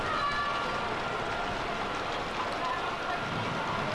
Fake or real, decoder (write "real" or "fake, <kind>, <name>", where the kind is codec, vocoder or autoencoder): real